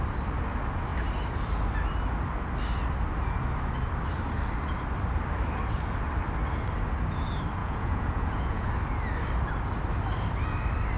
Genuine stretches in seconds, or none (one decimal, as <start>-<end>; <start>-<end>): 0.0-7.6; 8.7-11.0